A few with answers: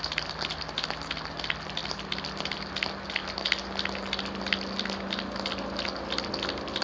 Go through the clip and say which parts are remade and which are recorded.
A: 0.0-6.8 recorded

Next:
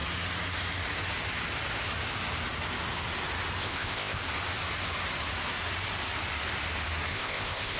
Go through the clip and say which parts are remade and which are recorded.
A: 0.0-3.6 recorded; 3.6-4.2 remade; 4.2-7.1 recorded; 7.1-7.8 remade